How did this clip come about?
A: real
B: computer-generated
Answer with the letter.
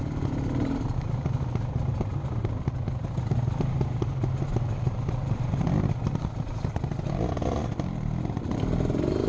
A